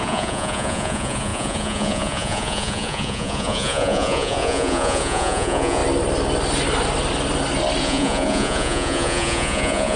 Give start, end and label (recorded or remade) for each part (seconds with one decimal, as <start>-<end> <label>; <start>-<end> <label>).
0.0-5.8 remade; 5.8-7.8 recorded; 7.8-10.0 remade